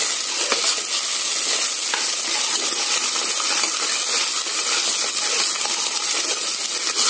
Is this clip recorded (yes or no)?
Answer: yes